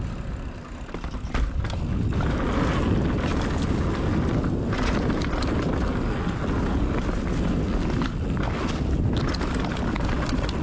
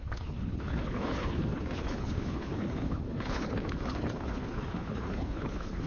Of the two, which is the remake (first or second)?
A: second